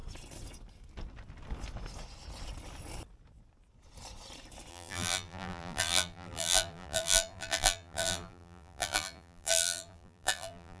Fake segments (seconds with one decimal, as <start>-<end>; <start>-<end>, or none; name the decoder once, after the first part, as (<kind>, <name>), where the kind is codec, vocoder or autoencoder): 4.7-10.8 (vocoder, BigVGAN v2)